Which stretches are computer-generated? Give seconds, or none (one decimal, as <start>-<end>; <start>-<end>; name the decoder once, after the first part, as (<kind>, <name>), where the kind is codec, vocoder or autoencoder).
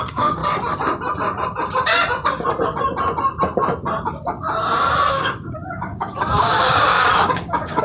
0.0-0.4 (codec, DAC); 5.1-7.8